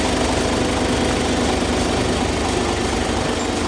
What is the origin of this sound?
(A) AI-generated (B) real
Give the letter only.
B